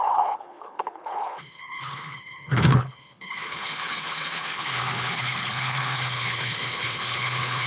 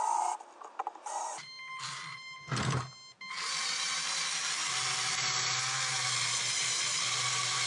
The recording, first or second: second